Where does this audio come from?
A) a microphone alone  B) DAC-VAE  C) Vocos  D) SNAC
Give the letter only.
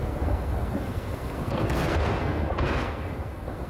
D